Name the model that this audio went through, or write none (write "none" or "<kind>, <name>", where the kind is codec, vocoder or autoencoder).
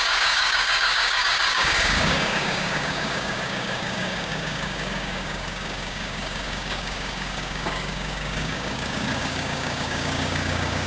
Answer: codec, DAC